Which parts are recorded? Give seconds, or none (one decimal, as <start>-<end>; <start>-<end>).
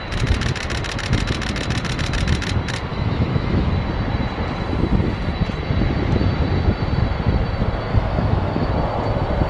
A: 0.0-2.9; 3.7-7.9; 8.7-9.5